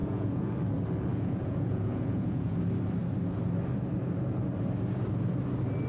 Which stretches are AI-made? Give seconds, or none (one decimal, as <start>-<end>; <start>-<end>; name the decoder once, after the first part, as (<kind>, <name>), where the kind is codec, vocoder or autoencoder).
0.0-0.5 (vocoder, Vocos); 1.1-2.6